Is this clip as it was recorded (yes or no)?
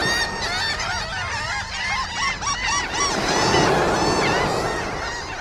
yes